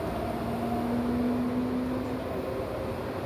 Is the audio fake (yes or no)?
no